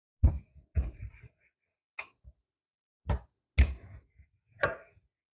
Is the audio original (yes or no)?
yes